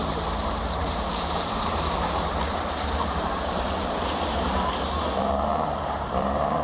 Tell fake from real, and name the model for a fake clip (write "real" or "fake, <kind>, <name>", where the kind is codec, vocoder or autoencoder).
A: fake, vocoder, BigVGAN v2